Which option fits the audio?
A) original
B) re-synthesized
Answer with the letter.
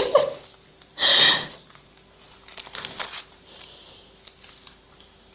A